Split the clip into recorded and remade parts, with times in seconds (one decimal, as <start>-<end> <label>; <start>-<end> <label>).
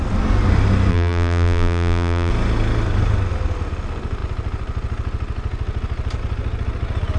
0.0-0.9 recorded; 0.9-2.3 remade; 2.3-7.2 recorded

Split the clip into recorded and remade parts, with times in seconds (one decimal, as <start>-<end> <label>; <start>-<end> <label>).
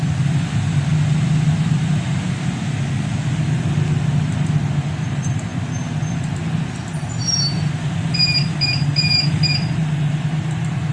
0.0-0.9 remade; 0.9-4.7 recorded; 4.7-5.5 remade; 5.5-7.3 recorded; 7.3-10.9 remade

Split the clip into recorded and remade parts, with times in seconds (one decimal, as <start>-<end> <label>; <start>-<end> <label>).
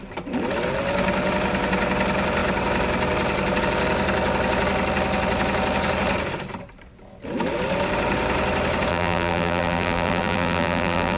0.0-8.9 recorded; 8.9-11.2 remade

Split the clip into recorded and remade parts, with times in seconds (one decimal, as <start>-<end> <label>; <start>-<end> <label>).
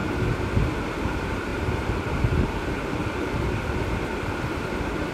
0.0-0.7 recorded; 0.7-3.0 remade; 3.0-5.1 recorded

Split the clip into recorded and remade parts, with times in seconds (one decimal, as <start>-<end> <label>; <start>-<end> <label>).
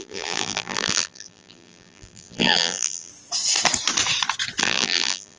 0.0-3.1 remade; 3.1-4.6 recorded; 4.6-5.4 remade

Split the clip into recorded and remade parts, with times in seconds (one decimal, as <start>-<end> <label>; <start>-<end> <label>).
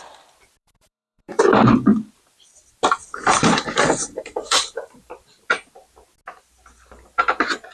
0.0-0.6 recorded; 0.6-1.4 remade; 1.4-3.0 recorded; 3.0-5.1 remade; 5.1-7.7 recorded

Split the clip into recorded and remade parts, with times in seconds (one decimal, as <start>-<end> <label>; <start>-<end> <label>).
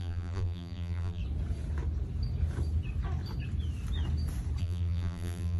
0.0-1.2 remade; 1.2-4.6 recorded; 4.6-5.6 remade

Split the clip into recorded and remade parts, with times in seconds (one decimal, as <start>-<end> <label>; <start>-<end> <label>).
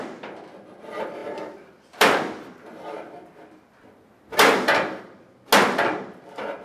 0.0-1.2 recorded; 1.2-5.0 remade; 5.0-6.6 recorded